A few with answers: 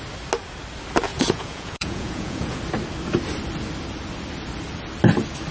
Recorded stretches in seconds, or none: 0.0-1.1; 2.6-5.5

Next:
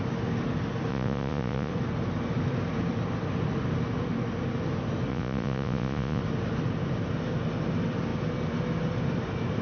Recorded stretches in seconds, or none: 0.0-0.9; 1.7-5.1; 6.2-9.6